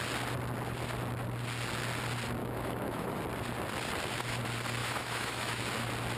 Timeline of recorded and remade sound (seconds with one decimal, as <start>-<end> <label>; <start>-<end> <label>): 0.0-2.4 recorded; 2.4-3.2 remade; 3.2-4.8 recorded; 4.8-5.6 remade; 5.6-6.2 recorded